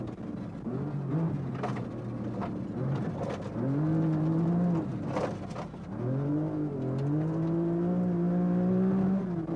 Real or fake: real